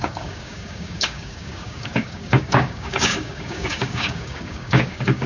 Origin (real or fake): fake